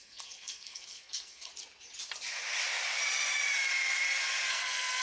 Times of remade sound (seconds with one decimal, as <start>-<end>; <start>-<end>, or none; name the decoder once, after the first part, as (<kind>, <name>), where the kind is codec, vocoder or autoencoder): 0.0-1.5 (codec, SNAC); 4.5-5.0